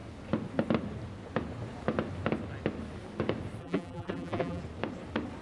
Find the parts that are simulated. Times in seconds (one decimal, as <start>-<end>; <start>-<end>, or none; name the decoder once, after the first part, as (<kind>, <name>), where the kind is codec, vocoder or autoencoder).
3.6-4.6 (vocoder, BigVGAN v2)